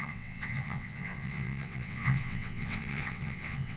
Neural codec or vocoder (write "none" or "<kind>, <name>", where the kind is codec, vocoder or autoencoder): vocoder, WaveNeXt